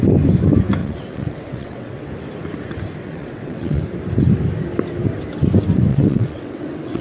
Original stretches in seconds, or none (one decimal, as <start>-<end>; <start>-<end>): 0.0-0.8; 2.1-3.0; 3.8-5.9